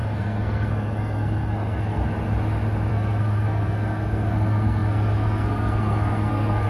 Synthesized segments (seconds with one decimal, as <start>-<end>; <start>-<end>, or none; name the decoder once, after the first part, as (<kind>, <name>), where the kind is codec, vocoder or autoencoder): 0.0-2.0 (codec, SNAC); 2.9-6.7